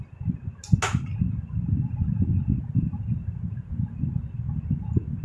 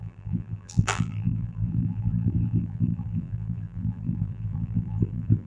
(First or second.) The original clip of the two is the first